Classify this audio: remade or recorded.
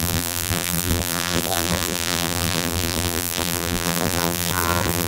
remade